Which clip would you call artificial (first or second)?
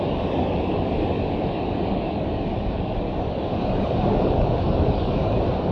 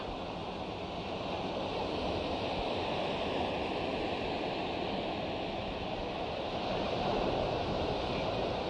first